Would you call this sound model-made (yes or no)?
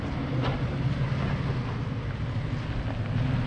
no